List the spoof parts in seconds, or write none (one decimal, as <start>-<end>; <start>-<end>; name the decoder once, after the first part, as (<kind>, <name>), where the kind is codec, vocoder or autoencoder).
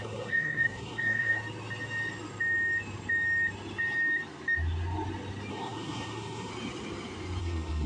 0.0-1.4 (codec, SNAC); 5.5-6.5; 7.4-7.9